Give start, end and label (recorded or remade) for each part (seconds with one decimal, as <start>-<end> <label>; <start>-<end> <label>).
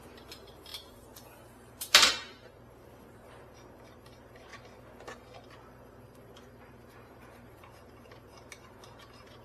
0.0-4.5 remade; 4.5-5.7 recorded; 5.7-9.4 remade